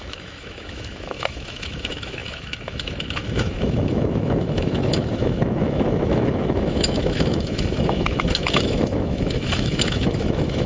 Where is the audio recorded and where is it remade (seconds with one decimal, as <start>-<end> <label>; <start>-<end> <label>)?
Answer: 0.0-10.7 remade